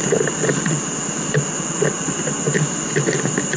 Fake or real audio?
real